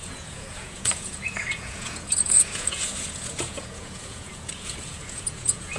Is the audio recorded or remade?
remade